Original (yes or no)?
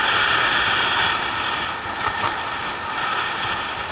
yes